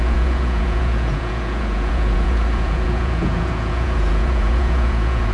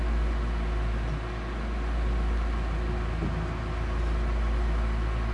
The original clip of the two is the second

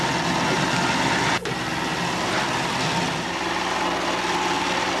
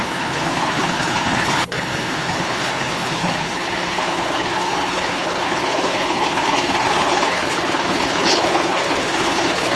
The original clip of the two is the first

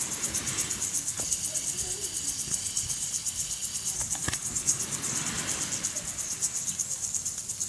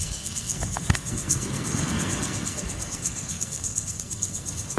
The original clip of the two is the first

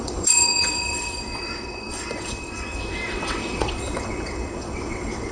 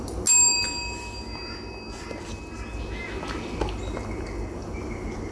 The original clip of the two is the second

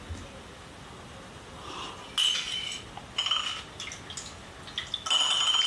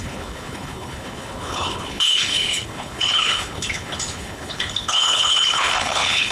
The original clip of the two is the first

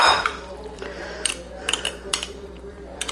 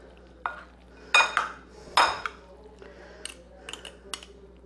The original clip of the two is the second